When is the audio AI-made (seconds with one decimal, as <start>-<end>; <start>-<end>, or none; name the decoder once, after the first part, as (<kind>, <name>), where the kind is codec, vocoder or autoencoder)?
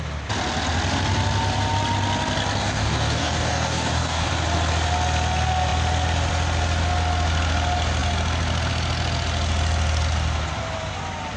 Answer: 2.6-4.3 (codec, DAC)